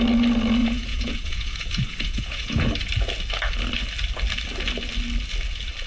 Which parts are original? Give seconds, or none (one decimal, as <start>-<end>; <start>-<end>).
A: 0.0-0.6; 2.7-5.9